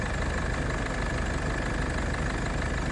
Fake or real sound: real